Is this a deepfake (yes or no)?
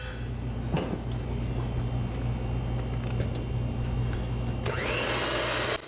no